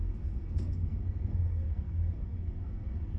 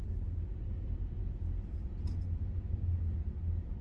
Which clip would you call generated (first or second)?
first